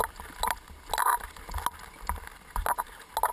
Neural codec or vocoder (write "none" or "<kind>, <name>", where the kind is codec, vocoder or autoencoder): none